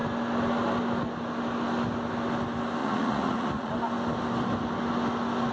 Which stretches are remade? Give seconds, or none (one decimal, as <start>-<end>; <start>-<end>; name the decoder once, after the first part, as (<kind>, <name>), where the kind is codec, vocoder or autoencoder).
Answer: 2.8-3.7 (vocoder, Vocos)